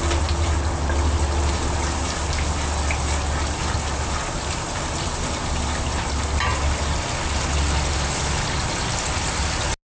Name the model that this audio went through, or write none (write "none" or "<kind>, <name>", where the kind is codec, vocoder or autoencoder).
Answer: none